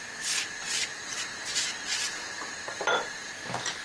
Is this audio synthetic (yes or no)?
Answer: yes